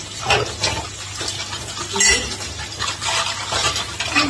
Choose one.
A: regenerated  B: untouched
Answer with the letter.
B